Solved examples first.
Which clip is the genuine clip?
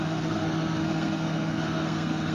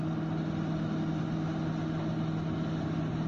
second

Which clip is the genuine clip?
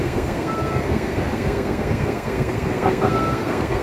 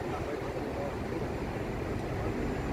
second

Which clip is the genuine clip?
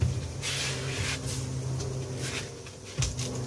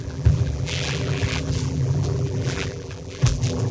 first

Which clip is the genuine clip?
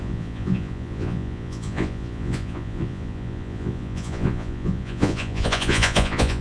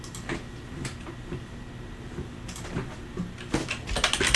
second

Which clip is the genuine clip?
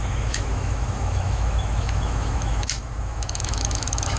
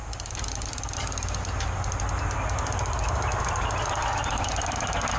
second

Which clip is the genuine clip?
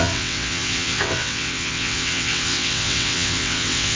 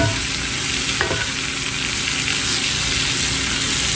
second